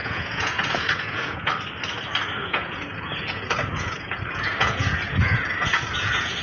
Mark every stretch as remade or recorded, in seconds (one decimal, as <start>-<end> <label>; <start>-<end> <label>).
0.0-1.5 remade; 1.5-2.4 recorded; 2.4-6.4 remade